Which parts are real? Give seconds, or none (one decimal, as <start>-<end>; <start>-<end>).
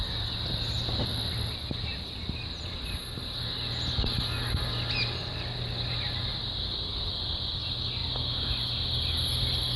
0.0-9.8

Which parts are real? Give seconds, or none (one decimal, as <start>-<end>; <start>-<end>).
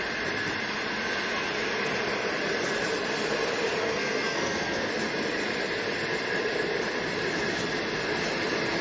0.0-3.8; 4.9-8.8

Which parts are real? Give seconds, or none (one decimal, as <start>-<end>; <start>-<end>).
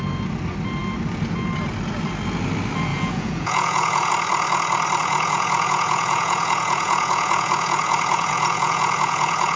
0.0-2.9; 4.1-5.0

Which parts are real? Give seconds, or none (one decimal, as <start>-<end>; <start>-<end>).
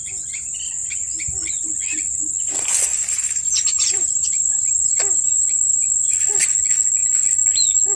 0.0-2.9; 6.1-8.0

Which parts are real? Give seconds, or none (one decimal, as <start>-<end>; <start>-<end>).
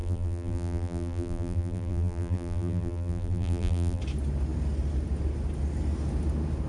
4.0-6.7